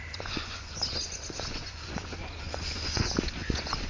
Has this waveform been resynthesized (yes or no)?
yes